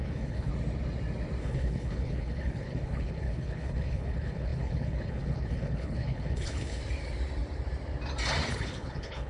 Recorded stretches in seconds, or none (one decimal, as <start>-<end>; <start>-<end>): 0.5-1.4; 6.8-8.5